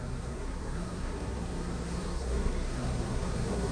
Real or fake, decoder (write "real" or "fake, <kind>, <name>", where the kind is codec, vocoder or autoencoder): fake, codec, SNAC